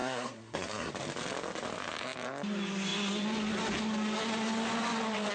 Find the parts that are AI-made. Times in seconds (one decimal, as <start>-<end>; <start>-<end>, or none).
0.0-0.9